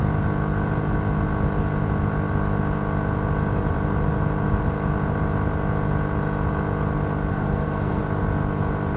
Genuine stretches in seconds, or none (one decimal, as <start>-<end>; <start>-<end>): 0.0-7.3; 8.0-9.0